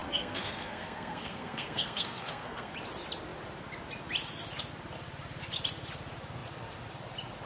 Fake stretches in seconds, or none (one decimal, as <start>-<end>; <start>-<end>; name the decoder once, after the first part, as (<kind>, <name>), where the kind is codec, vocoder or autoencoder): 0.0-2.7 (codec, SNAC)